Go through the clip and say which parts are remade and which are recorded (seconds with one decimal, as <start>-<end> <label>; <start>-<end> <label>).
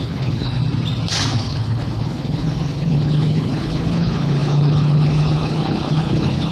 0.0-0.6 remade; 0.6-1.3 recorded; 1.3-6.5 remade